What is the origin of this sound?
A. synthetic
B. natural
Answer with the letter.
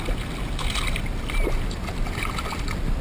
B